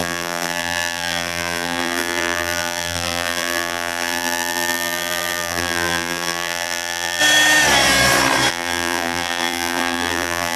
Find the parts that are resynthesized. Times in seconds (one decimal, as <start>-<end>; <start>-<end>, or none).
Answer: 0.0-7.2; 8.5-10.6